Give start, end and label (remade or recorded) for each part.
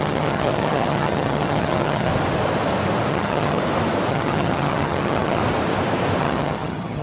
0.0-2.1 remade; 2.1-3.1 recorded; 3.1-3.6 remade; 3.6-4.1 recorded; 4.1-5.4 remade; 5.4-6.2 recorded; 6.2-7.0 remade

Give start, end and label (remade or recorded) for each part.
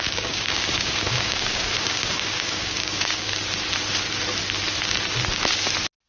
0.0-3.3 remade; 3.3-6.1 recorded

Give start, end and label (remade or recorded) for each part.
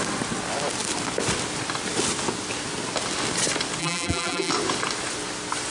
0.0-3.8 recorded; 3.8-4.5 remade; 4.5-5.7 recorded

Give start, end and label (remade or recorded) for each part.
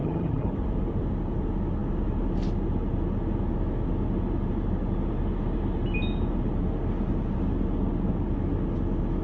0.0-0.5 remade; 0.5-9.2 recorded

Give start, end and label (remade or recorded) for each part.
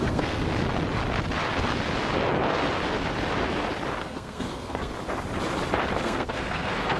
0.0-0.5 remade; 0.5-4.0 recorded; 4.0-4.9 remade; 4.9-6.0 recorded; 6.0-7.0 remade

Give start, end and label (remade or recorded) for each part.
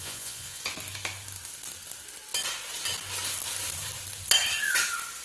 0.0-0.6 remade; 0.6-5.2 recorded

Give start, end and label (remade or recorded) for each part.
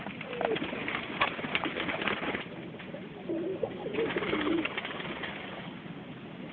0.0-3.5 recorded; 3.5-5.0 remade; 5.0-6.5 recorded